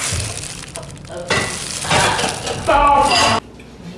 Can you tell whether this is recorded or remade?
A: recorded